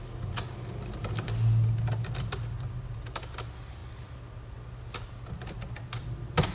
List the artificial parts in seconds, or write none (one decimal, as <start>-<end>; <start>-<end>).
none